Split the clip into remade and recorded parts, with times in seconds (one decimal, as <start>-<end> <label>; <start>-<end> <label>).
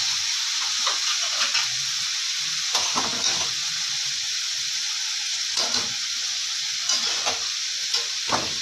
0.0-8.6 remade